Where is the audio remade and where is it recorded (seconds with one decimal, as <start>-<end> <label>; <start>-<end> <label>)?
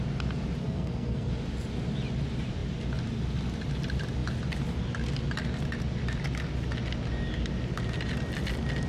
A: 0.0-0.6 recorded; 0.6-1.3 remade; 1.3-8.9 recorded